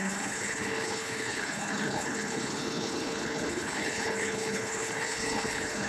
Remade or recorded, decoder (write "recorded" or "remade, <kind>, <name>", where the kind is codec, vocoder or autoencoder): remade, codec, HILCodec